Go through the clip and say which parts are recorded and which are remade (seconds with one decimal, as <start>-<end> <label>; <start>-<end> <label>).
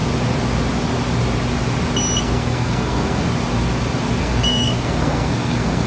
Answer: 0.0-2.2 recorded; 2.2-3.2 remade; 3.2-4.2 recorded; 4.2-5.9 remade